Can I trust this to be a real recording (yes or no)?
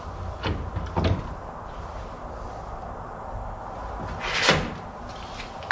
yes